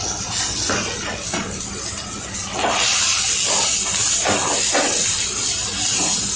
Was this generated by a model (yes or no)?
no